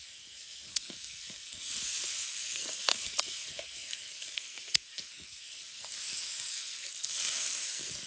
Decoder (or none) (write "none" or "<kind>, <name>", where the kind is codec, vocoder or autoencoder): codec, SNAC